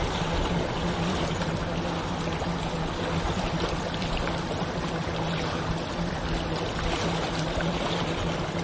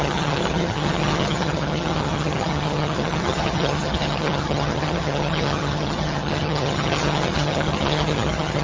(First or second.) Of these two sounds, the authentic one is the first